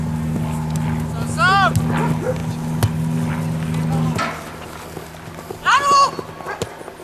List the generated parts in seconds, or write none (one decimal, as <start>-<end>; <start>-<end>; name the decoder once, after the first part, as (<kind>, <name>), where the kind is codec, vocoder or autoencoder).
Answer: none